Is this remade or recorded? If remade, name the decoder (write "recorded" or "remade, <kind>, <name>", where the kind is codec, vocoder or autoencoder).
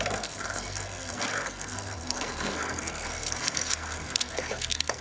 remade, codec, SNAC